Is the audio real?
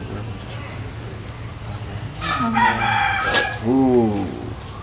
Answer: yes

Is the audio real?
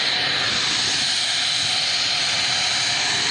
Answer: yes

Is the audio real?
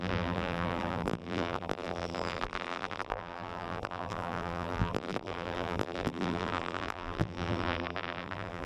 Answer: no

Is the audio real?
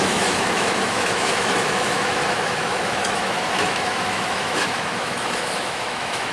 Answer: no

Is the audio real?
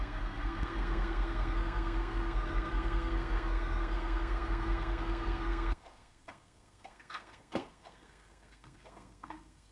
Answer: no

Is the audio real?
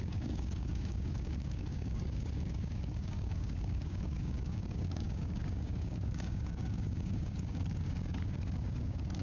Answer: no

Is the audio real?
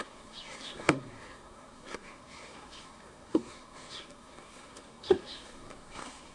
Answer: no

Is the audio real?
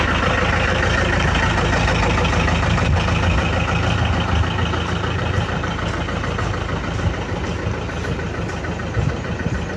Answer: yes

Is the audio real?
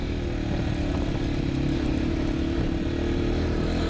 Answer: yes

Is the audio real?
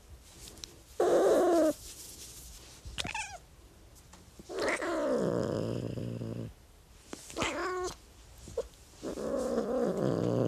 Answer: yes